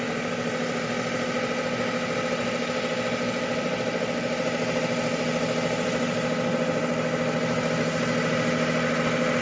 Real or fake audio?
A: real